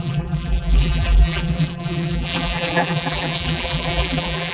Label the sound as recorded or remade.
remade